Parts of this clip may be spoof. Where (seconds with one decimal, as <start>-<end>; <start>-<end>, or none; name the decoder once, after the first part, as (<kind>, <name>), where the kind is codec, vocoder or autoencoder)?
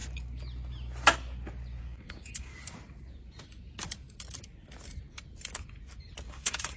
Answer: 1.8-2.5 (codec, DAC); 6.3-6.8